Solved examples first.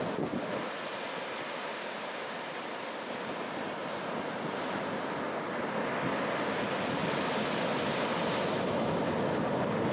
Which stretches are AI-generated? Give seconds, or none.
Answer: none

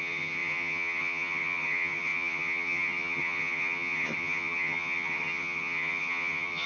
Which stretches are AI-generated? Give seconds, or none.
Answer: 0.0-6.7

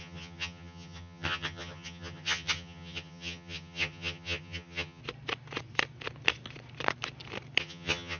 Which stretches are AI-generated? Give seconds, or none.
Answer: 0.0-5.0; 7.6-8.2